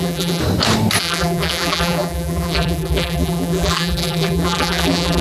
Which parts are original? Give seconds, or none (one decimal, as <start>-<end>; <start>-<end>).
0.4-1.0